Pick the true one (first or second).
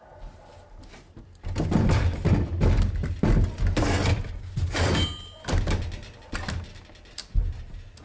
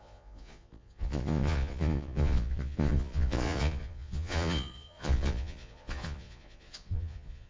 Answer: first